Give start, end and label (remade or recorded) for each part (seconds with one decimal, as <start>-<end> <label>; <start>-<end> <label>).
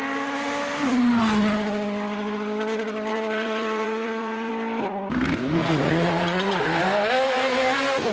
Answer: 0.0-3.1 recorded; 3.1-4.5 remade; 4.5-5.6 recorded; 5.6-6.6 remade; 6.6-8.1 recorded